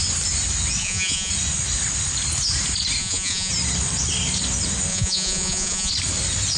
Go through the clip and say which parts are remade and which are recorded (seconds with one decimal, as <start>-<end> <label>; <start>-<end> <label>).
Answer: 0.0-0.8 recorded; 0.8-1.3 remade; 1.3-3.0 recorded; 3.0-3.5 remade; 3.5-4.9 recorded; 4.9-5.9 remade; 5.9-6.6 recorded